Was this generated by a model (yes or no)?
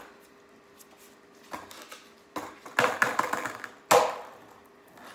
no